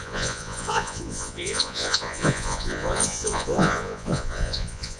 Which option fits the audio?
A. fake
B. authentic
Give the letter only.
A